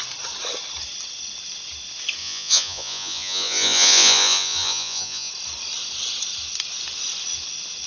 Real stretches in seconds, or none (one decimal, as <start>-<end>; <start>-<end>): 0.0-2.2; 5.3-7.9